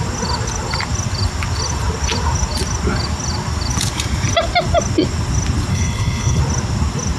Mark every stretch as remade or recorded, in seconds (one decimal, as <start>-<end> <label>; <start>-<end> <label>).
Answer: 0.0-5.7 recorded; 5.7-6.4 remade; 6.4-7.2 recorded